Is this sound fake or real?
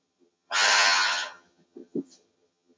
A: fake